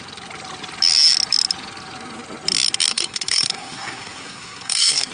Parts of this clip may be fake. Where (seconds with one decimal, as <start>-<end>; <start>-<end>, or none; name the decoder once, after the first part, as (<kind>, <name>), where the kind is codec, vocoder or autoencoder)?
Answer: 2.9-5.1 (codec, SNAC)